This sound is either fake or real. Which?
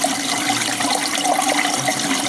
real